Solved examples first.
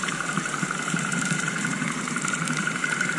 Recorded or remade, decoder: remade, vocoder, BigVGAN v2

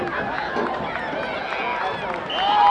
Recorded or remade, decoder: recorded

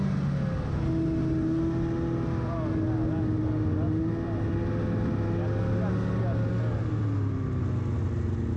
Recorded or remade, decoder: recorded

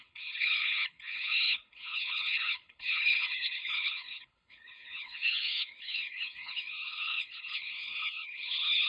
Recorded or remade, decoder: remade, codec, HILCodec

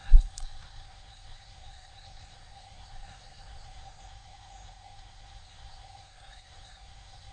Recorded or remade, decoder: remade, codec, SNAC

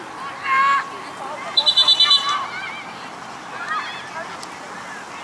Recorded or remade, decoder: recorded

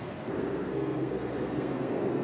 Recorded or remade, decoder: remade, codec, SNAC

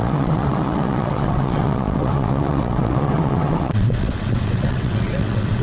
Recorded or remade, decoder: remade, vocoder, WaveNeXt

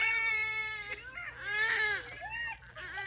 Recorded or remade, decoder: recorded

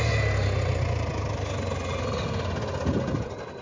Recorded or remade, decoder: recorded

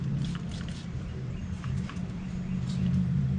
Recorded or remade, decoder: remade, vocoder, BigVGAN v2